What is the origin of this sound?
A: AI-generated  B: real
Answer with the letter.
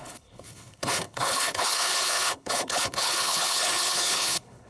A